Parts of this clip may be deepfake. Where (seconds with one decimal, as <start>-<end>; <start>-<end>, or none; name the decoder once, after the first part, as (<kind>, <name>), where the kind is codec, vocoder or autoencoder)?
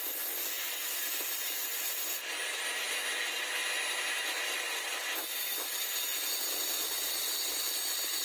none